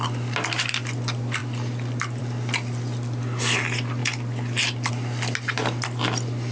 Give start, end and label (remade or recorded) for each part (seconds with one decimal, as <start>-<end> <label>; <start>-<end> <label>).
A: 0.0-6.5 recorded

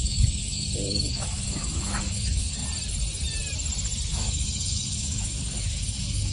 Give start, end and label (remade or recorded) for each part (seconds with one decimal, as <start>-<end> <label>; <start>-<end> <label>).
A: 0.0-2.6 remade; 2.6-4.1 recorded; 4.1-6.3 remade